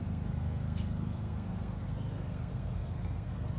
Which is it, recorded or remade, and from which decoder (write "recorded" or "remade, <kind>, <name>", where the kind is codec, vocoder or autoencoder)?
remade, codec, SNAC